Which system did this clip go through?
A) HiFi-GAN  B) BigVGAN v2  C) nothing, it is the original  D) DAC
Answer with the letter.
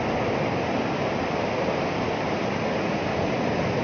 C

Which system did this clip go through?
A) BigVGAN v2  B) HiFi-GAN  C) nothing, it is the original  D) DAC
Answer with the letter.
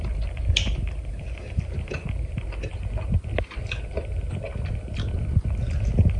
C